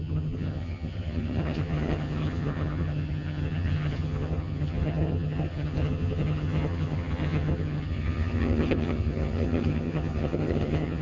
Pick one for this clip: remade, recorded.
remade